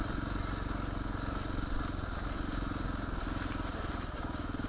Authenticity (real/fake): real